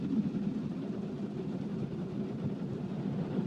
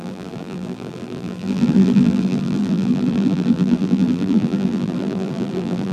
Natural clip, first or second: first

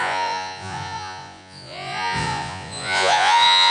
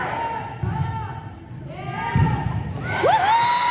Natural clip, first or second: second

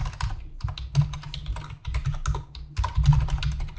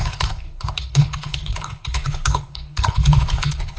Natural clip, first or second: first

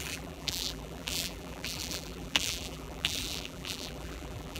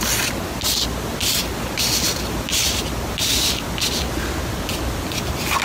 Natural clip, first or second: second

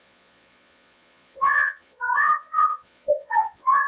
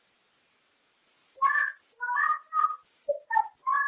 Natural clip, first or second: second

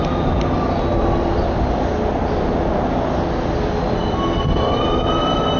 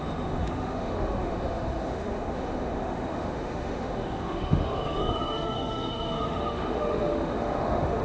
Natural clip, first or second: first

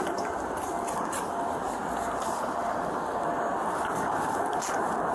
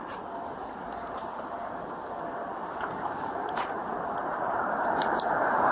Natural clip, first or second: first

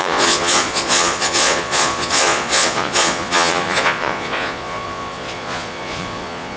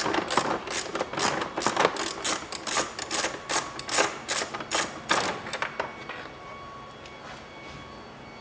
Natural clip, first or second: second